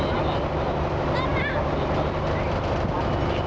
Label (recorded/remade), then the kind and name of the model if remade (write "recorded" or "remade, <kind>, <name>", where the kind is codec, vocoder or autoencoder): recorded